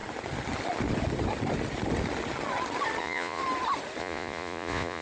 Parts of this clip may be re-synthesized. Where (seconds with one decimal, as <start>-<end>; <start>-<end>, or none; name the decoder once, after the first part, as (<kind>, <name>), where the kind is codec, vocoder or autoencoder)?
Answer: 3.0-3.4 (vocoder, Vocos); 4.0-5.0